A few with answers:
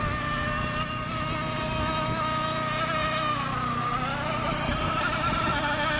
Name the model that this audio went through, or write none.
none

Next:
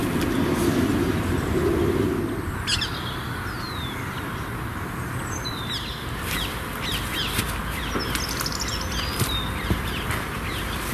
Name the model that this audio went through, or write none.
none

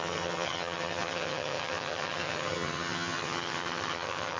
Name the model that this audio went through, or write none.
vocoder, HiFi-GAN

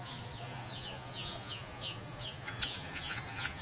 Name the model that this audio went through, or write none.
vocoder, Vocos